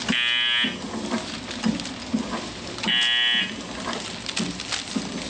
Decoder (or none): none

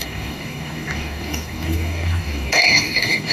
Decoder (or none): codec, DAC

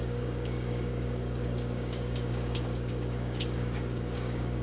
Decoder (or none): codec, DAC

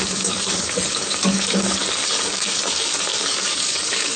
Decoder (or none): codec, DAC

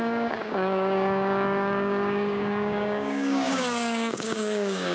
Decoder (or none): codec, DAC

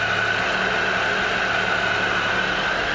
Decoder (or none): none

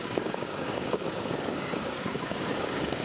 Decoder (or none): codec, DAC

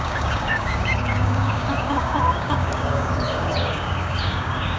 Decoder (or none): codec, DAC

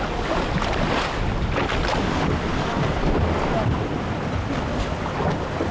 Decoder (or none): none